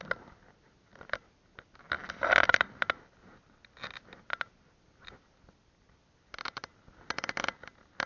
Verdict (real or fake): real